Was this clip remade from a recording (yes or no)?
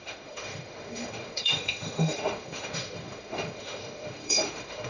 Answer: yes